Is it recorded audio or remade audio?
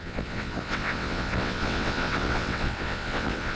remade